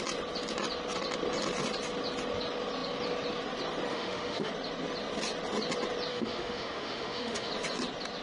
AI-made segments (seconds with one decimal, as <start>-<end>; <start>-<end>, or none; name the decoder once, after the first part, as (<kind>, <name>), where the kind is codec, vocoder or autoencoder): 3.9-4.5 (autoencoder, DAC-VAE); 6.1-7.5